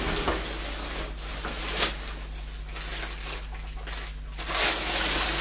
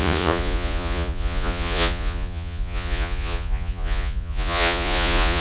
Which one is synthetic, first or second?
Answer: second